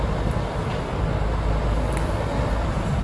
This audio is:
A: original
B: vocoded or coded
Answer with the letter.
A